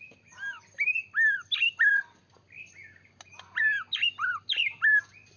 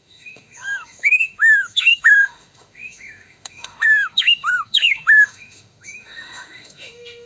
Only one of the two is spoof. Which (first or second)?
second